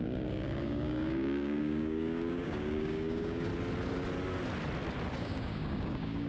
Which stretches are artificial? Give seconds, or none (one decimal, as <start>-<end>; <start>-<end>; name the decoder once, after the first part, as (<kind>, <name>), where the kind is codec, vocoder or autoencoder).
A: 0.0-3.5 (codec, DAC); 5.2-6.3